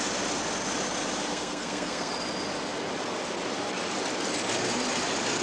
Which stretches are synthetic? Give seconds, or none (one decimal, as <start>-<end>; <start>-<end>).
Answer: 1.3-2.1